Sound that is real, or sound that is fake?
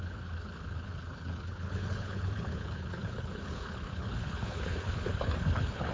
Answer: fake